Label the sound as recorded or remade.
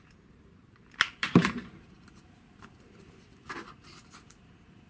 remade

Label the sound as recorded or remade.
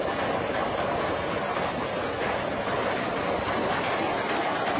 recorded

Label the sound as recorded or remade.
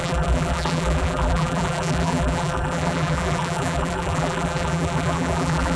remade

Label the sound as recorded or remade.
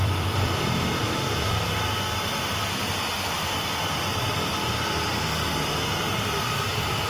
remade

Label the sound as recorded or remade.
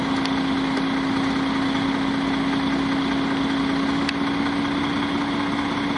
recorded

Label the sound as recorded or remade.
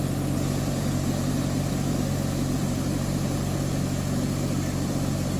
remade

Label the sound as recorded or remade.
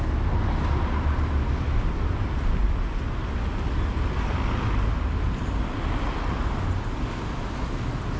recorded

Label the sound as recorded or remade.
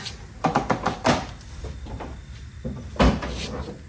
recorded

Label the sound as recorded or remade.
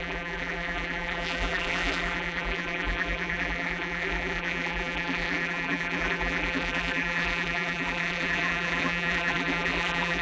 remade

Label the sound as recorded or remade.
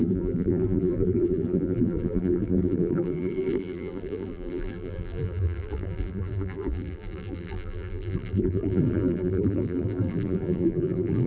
remade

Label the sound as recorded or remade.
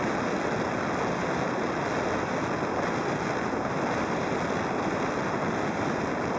recorded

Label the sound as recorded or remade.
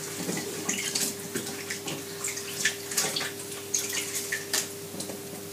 recorded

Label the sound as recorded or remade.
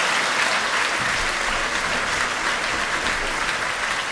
recorded